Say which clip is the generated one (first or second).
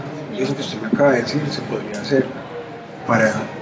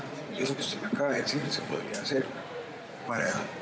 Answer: second